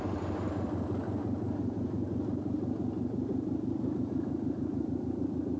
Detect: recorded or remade remade